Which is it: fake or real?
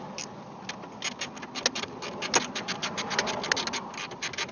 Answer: real